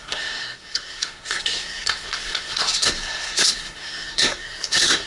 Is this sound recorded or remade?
remade